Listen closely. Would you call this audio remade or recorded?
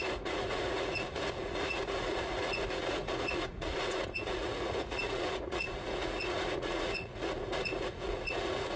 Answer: remade